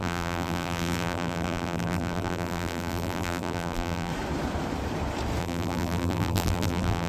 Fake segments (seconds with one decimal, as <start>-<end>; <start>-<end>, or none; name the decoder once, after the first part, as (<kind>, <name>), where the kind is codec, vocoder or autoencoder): 0.0-4.1 (vocoder, BigVGAN v2); 5.4-7.1